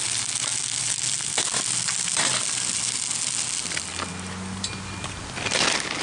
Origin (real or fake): real